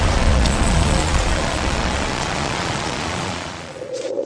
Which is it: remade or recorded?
remade